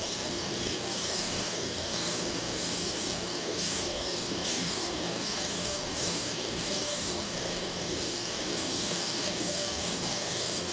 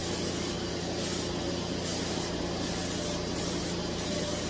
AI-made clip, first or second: first